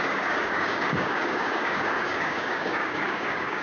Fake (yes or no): yes